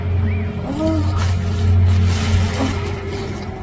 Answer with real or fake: real